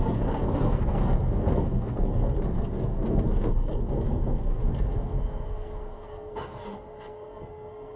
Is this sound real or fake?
fake